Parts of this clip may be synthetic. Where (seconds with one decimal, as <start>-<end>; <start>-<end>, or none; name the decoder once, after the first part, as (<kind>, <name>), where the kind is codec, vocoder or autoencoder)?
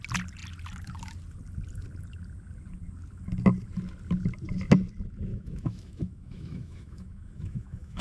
5.3-8.0 (autoencoder, DAC-VAE)